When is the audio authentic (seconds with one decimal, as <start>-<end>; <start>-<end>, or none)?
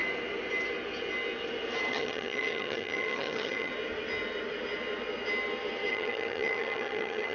0.0-1.9; 3.7-5.9